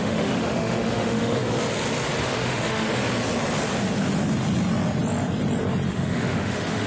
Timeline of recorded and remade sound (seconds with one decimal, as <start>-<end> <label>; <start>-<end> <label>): 0.0-1.4 remade; 1.4-2.2 recorded; 2.2-2.9 remade; 2.9-5.9 recorded; 5.9-6.9 remade